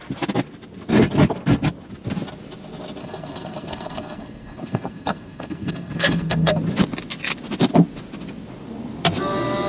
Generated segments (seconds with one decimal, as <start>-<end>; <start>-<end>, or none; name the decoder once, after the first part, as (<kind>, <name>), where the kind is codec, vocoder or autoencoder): 3.0-6.6 (codec, SNAC)